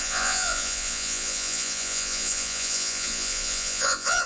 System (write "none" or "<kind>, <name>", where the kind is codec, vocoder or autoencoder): vocoder, Vocos